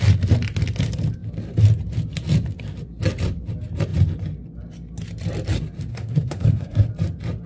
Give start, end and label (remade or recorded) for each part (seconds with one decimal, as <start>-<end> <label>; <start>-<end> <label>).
0.0-5.9 recorded; 5.9-6.9 remade; 6.9-7.5 recorded